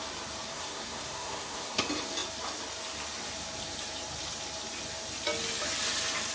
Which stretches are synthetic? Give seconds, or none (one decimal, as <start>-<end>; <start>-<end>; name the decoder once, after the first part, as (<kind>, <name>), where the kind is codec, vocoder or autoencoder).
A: 0.5-1.8 (codec, SNAC)